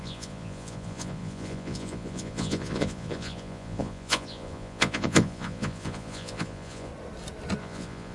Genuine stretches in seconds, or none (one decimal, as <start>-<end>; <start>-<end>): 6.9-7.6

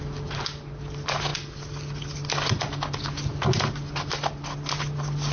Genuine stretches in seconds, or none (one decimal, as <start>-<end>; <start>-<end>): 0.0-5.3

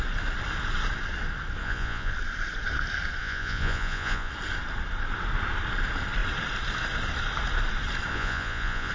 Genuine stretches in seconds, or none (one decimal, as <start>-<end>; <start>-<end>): 0.0-1.6; 2.1-3.2; 4.3-8.1